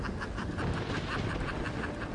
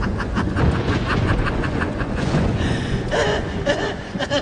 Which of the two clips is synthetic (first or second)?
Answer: second